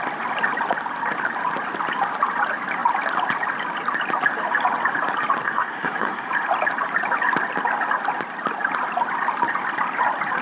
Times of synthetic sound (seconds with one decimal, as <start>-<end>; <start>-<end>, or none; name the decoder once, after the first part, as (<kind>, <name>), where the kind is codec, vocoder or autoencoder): 5.4-6.3 (codec, SNAC)